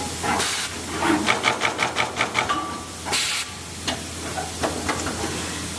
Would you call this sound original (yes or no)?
yes